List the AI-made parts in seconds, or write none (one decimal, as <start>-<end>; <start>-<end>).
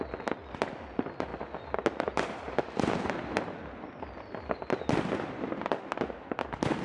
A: none